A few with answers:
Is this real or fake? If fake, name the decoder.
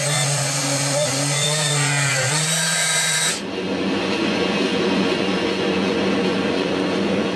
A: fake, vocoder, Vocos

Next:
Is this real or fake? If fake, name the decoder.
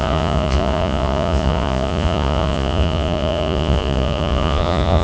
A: fake, vocoder, Vocos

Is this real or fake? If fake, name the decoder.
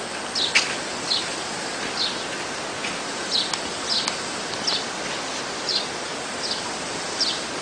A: real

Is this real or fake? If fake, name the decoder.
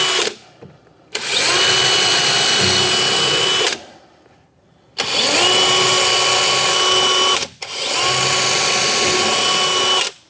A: real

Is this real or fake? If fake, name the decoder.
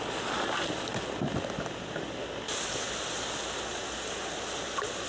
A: real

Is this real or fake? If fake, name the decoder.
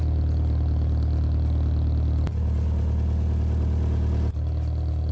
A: real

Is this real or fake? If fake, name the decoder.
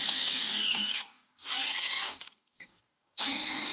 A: fake, codec, DAC